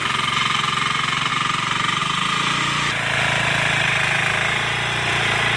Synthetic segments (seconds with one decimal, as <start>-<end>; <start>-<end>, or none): 0.0-1.3; 2.0-5.6